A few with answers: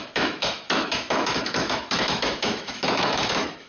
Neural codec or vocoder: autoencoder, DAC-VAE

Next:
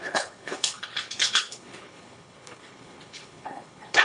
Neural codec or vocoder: codec, HILCodec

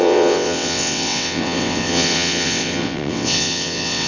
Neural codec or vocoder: vocoder, WaveNeXt